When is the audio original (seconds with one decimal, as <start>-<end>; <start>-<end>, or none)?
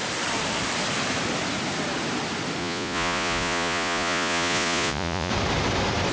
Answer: 0.0-2.6; 5.3-6.1